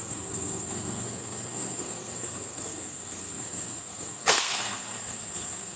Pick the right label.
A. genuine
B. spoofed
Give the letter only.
B